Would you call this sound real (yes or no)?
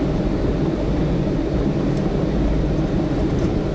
no